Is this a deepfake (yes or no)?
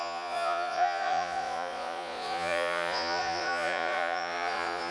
yes